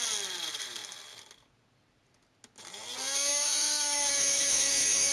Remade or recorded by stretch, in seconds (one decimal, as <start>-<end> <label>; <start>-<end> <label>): 0.0-3.3 recorded; 3.3-5.1 remade